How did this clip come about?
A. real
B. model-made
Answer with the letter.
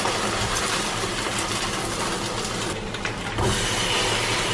A